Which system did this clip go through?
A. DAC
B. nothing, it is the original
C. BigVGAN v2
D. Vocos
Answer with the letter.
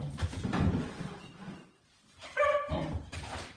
C